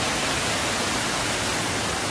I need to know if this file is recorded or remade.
recorded